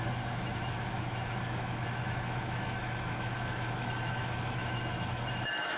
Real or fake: fake